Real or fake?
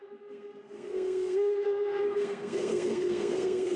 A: fake